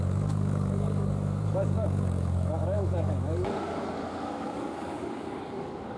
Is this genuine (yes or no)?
no